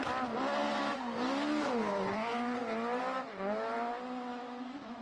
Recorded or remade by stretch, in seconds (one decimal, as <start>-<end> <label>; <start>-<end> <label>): 0.0-4.3 recorded; 4.3-5.0 remade